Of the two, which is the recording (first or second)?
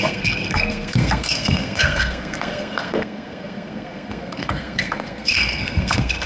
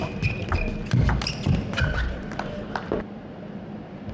second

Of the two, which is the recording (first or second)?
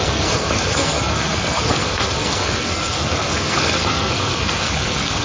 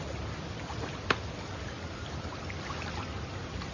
second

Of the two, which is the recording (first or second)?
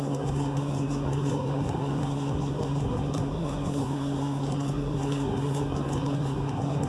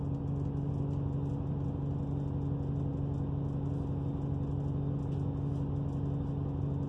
second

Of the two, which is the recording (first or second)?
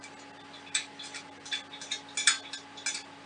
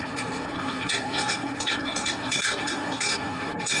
first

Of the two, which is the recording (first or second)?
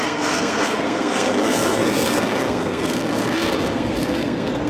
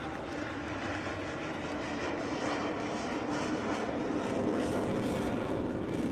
second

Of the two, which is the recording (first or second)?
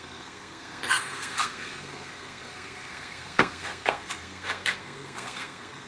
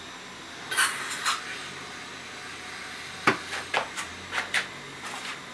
second